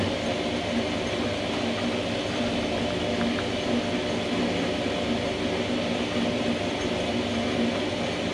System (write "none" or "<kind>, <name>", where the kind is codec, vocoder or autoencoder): none